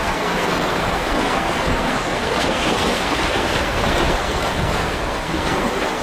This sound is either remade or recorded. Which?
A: remade